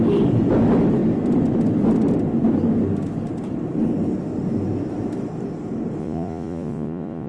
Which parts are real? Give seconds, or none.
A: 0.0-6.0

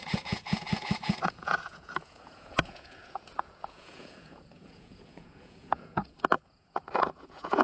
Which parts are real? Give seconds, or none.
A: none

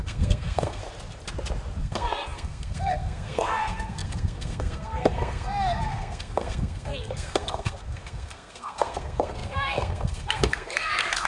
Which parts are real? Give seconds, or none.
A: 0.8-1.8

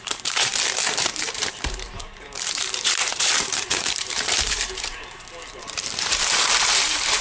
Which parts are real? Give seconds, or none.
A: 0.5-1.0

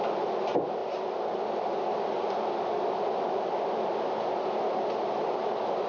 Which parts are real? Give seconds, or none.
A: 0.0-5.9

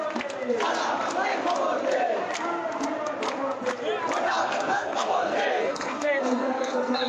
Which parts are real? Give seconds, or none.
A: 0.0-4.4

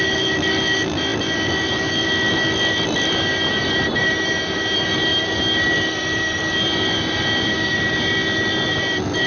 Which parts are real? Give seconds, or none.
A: none